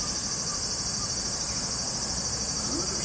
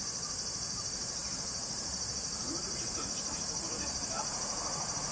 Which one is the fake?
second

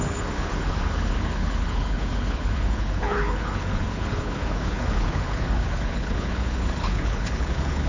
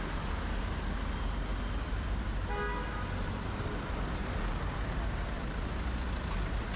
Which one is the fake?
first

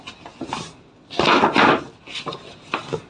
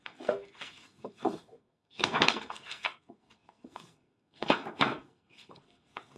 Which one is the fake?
second